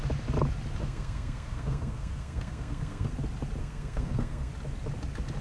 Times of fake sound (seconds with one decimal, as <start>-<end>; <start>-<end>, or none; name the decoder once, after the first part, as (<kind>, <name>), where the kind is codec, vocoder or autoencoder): 0.8-3.1 (codec, SNAC); 3.6-4.5